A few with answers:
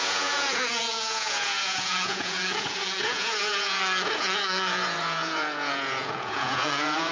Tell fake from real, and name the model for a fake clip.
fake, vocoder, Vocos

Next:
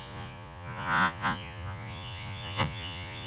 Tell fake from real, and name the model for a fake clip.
fake, vocoder, Vocos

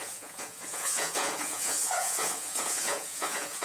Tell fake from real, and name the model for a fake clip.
fake, vocoder, Vocos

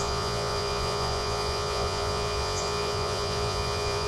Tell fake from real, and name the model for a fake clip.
fake, vocoder, Vocos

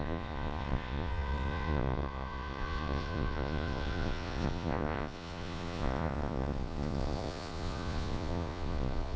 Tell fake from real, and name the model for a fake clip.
fake, vocoder, Vocos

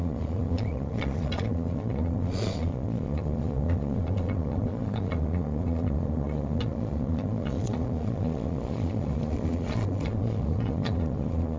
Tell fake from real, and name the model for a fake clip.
fake, vocoder, Vocos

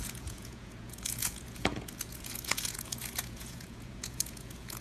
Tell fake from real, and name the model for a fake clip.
fake, vocoder, Vocos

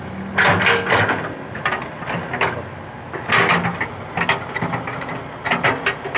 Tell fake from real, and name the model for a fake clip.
real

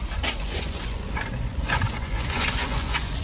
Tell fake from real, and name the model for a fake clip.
fake, vocoder, Vocos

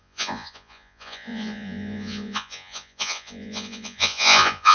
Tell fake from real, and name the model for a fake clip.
fake, vocoder, Vocos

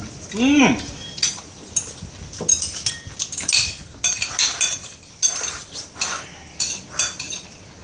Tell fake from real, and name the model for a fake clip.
real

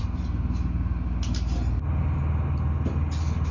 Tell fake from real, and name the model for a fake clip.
real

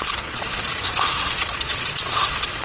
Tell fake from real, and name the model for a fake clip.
fake, vocoder, Vocos